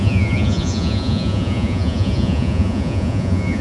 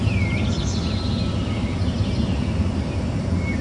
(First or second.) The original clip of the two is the second